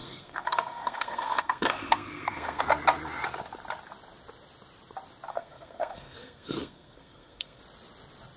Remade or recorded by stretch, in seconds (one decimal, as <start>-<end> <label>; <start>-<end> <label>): 0.0-2.6 remade; 2.6-5.3 recorded; 5.3-7.6 remade; 7.6-8.4 recorded